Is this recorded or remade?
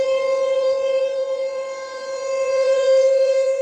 remade